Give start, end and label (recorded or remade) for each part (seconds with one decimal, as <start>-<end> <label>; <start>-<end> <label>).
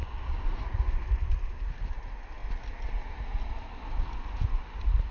0.0-5.1 recorded